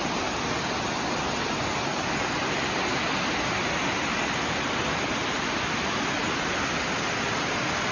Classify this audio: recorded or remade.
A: recorded